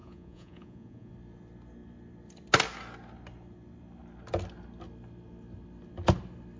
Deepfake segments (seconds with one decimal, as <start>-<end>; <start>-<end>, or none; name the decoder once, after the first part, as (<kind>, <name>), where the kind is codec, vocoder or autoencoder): 0.0-1.1 (vocoder, Vocos)